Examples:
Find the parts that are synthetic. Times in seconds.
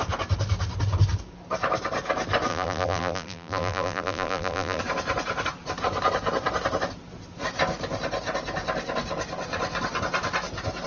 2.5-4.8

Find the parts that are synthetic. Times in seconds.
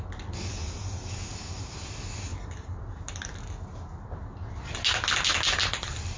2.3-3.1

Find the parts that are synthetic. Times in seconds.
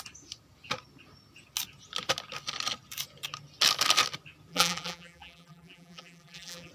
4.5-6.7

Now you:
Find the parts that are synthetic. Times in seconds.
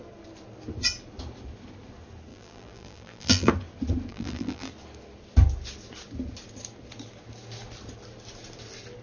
2.3-3.5; 4.1-4.7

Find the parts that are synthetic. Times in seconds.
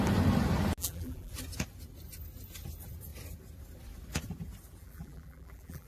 0.8-1.3; 4.8-5.9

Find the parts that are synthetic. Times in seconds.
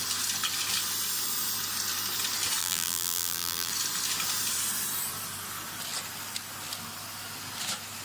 2.6-3.7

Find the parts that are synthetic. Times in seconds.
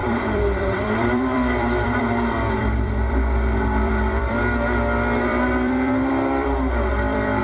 0.0-2.0; 2.6-4.4; 5.3-7.4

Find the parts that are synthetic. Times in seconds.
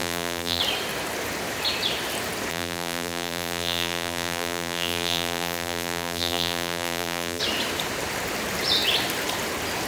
0.0-0.6; 2.5-7.4